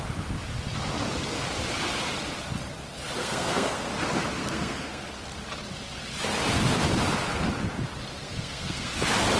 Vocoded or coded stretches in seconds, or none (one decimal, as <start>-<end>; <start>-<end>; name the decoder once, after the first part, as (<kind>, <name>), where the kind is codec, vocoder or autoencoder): 3.2-3.9 (codec, SNAC); 4.4-5.1; 8.1-8.9